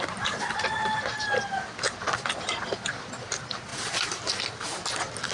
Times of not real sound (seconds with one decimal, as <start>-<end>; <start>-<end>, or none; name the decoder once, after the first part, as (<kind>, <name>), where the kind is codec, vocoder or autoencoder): 3.7-4.4 (vocoder, BigVGAN v2)